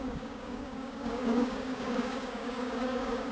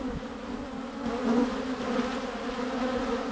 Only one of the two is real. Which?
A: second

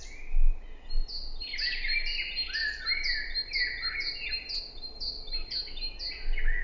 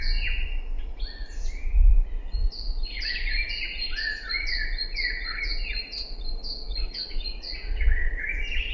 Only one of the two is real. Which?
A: first